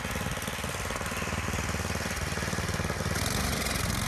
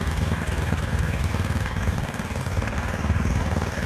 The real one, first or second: first